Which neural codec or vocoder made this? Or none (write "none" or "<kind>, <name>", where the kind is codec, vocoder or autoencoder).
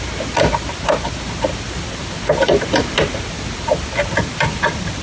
none